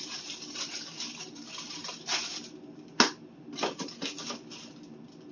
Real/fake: real